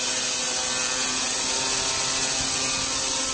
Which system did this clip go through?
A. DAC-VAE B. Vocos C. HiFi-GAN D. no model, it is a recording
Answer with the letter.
D